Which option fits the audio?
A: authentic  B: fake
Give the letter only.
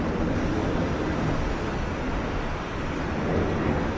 A